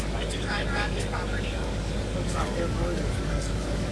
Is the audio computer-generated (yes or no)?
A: yes